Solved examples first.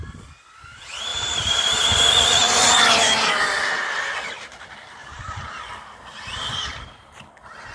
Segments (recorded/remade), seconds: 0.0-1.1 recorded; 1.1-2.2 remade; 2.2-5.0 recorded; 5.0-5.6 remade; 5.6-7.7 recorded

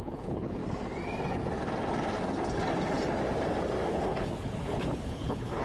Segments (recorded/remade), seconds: 0.0-0.6 remade; 0.6-3.9 recorded; 3.9-5.6 remade